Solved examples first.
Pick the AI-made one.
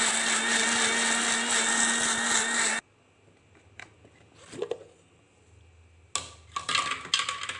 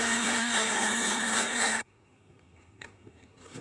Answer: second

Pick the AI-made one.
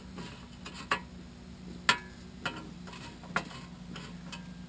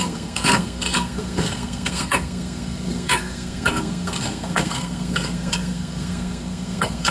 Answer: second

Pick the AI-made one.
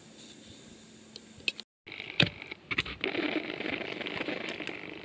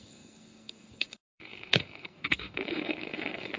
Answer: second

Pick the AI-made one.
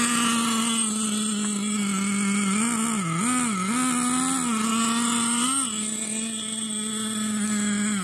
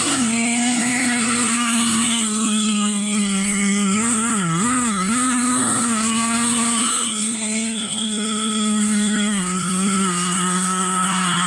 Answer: second